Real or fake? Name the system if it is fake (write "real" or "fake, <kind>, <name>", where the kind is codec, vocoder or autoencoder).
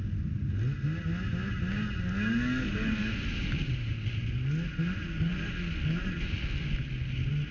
real